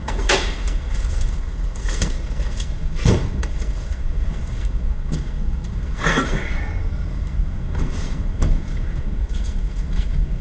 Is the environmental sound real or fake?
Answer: fake